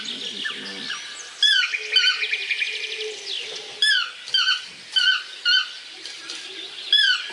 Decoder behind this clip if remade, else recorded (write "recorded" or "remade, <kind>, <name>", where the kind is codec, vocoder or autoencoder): recorded